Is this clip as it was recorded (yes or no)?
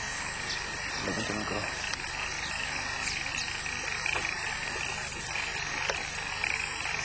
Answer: yes